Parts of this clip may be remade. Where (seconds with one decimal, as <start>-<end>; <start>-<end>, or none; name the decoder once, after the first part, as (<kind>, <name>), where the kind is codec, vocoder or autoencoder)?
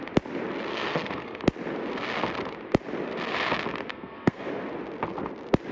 0.7-1.4 (codec, SNAC); 3.9-4.5